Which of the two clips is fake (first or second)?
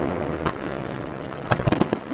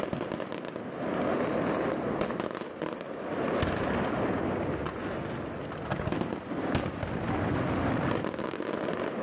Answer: first